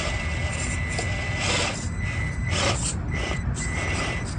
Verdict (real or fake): real